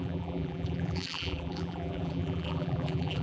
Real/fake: fake